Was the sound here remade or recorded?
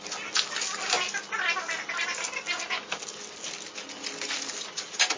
recorded